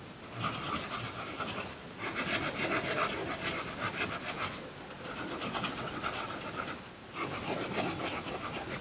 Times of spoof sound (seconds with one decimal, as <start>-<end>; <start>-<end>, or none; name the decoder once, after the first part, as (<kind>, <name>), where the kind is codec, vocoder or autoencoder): 5.5-6.3 (vocoder, WaveNeXt)

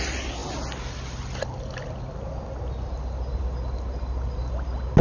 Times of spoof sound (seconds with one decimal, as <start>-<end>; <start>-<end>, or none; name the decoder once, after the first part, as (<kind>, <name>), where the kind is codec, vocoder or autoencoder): none

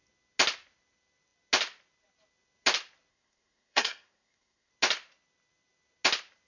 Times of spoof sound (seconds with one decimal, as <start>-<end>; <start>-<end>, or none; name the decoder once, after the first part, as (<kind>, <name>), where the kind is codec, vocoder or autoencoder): 3.1-4.7 (codec, SNAC)

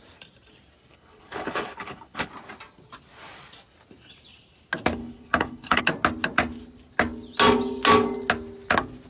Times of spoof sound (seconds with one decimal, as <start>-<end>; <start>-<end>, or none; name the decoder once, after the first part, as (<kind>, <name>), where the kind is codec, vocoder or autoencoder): 0.9-2.3 (codec, HILCodec); 5.0-5.8

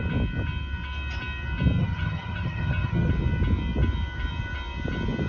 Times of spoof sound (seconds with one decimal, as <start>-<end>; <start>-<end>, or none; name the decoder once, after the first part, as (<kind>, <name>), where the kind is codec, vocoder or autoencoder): 1.8-3.1 (vocoder, HiFi-GAN)